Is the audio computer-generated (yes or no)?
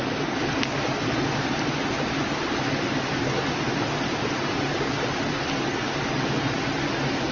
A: no